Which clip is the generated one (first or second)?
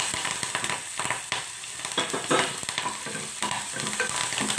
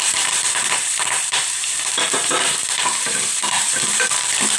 second